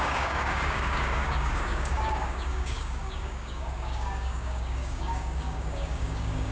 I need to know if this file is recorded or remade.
remade